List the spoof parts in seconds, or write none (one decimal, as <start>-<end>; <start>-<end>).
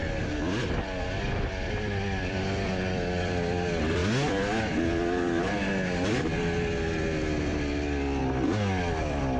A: 1.2-4.0; 8.9-9.4